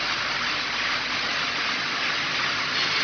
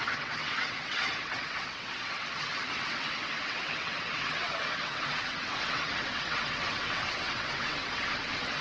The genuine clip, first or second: first